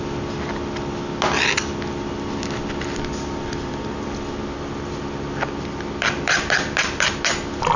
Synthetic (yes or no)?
no